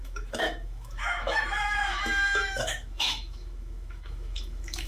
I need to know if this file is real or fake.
fake